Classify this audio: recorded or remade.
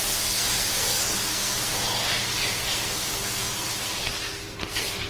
remade